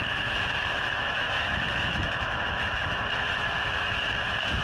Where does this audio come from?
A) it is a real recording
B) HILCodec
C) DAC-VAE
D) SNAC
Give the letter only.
C